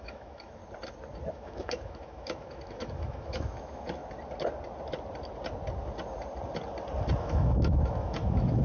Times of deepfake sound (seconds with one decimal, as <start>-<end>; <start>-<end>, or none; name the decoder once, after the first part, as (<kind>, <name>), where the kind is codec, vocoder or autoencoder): 0.0-0.6 (autoencoder, DAC-VAE); 1.3-4.0; 7.2-8.6